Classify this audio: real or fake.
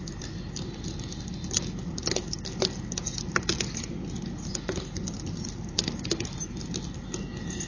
real